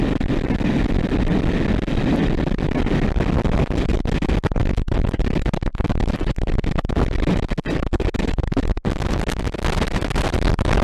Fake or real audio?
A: real